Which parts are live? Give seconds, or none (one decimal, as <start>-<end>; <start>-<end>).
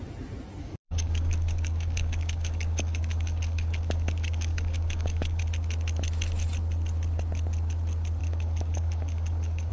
0.0-0.6; 5.4-8.2